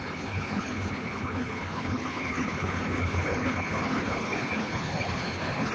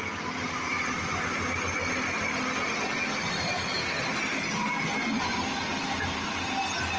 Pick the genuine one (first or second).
second